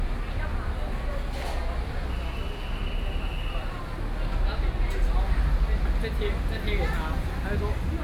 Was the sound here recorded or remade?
recorded